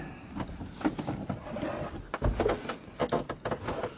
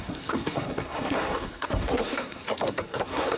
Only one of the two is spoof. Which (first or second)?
second